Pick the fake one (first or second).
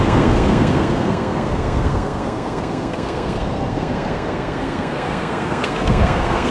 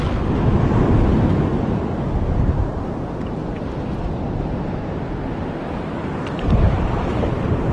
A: first